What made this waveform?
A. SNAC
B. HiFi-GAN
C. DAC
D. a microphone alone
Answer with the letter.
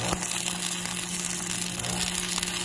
D